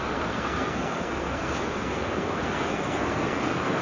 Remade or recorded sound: remade